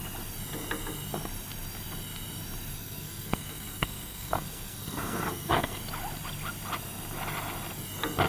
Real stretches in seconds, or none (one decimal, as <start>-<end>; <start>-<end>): 0.0-2.7; 5.8-8.3